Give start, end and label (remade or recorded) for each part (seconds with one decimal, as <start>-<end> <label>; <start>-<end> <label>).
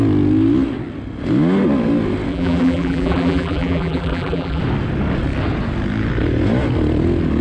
0.0-2.3 recorded; 2.3-4.6 remade; 4.6-7.4 recorded